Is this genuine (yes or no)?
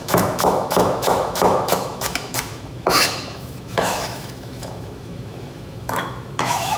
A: no